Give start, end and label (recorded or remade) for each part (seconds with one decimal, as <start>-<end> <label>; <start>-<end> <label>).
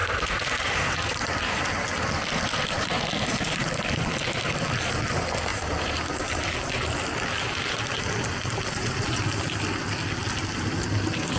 0.0-11.4 recorded